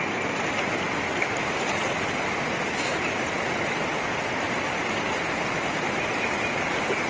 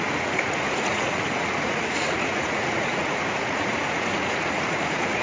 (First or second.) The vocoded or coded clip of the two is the second